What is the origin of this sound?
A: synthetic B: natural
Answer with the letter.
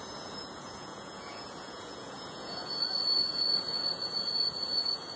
A